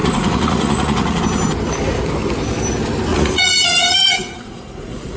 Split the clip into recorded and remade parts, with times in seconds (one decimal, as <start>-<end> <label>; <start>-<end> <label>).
0.0-1.2 remade; 1.2-3.1 recorded; 3.1-5.2 remade